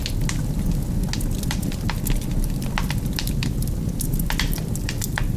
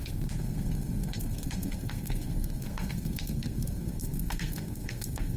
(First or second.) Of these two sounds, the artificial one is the second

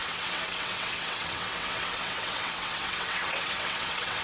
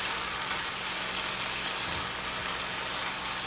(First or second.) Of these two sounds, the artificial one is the first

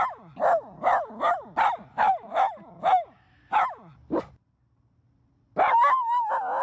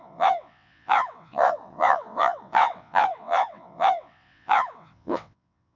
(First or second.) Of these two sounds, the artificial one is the second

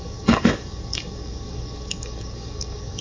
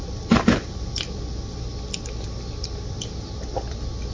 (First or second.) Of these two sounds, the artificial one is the first